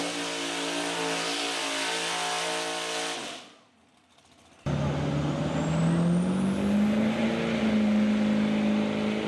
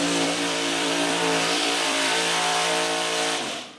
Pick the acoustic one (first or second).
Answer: first